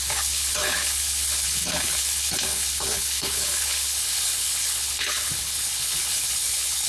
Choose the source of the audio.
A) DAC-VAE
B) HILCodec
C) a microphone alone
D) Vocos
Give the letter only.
B